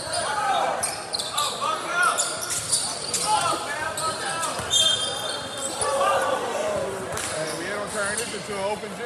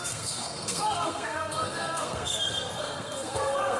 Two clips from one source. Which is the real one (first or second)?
first